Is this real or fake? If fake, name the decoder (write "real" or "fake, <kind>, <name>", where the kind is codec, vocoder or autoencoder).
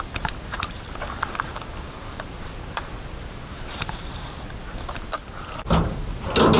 real